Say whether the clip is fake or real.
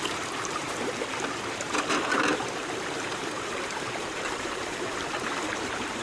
fake